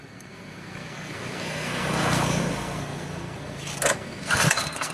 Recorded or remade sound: remade